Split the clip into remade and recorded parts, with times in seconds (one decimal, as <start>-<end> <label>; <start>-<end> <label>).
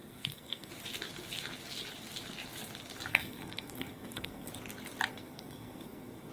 0.0-0.7 remade; 0.7-3.1 recorded; 3.1-4.5 remade; 4.5-5.1 recorded; 5.1-6.3 remade